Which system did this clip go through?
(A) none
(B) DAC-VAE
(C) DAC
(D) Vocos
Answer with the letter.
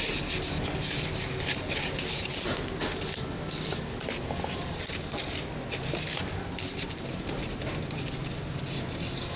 A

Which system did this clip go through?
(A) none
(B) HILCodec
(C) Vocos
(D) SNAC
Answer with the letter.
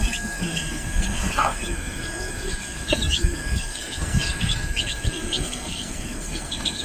D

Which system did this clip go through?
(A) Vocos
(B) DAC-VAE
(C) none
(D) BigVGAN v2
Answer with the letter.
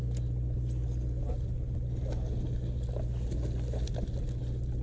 C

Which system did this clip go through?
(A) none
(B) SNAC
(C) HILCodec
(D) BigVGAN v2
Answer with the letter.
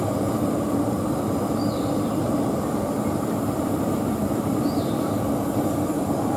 D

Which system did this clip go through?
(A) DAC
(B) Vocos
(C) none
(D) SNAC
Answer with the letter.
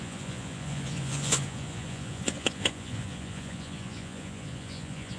B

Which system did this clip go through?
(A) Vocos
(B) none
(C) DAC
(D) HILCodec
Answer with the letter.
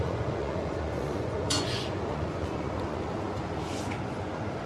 A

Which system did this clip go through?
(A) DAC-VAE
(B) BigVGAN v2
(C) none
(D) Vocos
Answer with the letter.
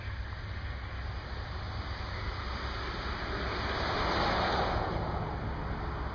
C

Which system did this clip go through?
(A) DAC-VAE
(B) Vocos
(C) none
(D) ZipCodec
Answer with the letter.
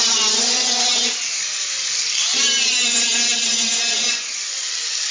C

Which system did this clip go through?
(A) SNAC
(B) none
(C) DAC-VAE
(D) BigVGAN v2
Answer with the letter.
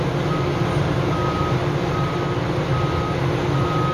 B